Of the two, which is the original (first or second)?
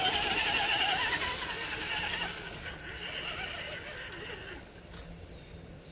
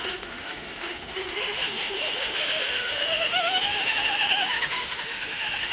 first